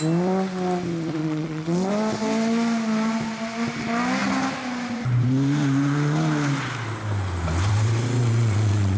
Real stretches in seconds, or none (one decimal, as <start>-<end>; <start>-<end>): 0.0-1.2; 1.9-8.2

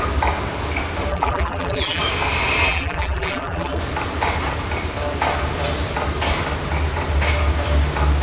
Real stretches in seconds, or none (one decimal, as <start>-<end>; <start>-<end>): 0.0-1.1; 2.0-2.7; 3.8-8.2

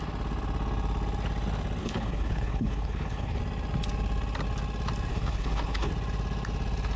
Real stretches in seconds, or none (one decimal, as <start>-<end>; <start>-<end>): 0.0-1.8; 3.4-5.1; 5.9-7.0

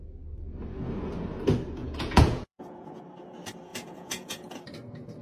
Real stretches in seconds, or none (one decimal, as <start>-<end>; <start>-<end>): 0.0-1.8; 3.0-3.7; 4.6-5.2

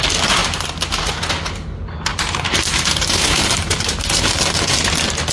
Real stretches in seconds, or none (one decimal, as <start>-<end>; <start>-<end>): 0.0-0.4; 1.3-2.1; 4.4-5.3

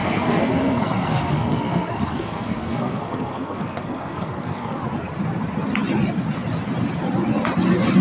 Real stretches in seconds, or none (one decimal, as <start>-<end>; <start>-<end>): 4.8-8.0

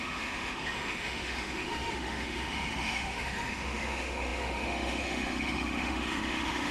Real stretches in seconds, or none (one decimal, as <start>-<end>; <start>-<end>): none